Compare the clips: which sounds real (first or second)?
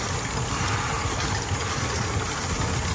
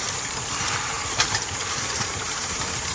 first